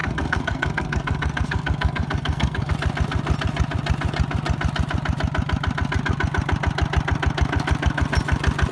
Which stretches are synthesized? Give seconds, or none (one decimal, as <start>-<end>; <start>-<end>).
0.0-2.7